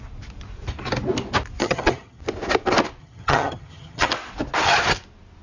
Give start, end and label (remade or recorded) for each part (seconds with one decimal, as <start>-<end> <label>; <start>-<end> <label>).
0.0-1.6 recorded; 1.6-2.2 remade; 2.2-3.0 recorded; 3.0-4.1 remade; 4.1-5.4 recorded